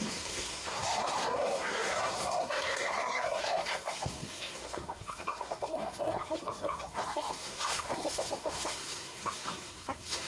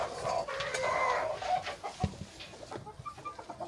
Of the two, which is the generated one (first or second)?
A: first